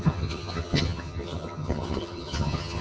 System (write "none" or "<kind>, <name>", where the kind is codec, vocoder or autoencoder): vocoder, HiFi-GAN